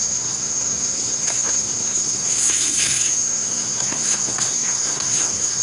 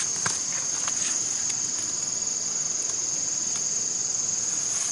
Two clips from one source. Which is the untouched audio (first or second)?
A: second